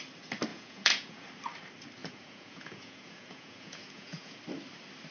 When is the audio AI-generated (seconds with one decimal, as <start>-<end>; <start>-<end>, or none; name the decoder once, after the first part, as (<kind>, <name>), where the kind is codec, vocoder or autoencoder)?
0.5-1.3 (vocoder, Vocos); 2.0-4.4